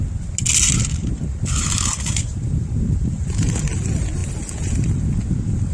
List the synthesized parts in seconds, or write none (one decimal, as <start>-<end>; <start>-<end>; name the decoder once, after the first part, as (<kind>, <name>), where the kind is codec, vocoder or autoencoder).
1.0-3.7 (vocoder, BigVGAN v2)